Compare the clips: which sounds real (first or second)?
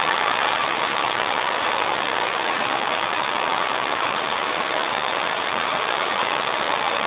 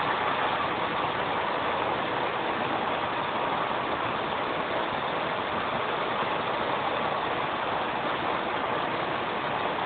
second